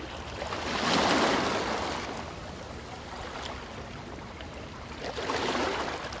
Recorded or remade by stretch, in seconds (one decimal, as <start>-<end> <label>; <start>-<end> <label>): 0.0-6.2 recorded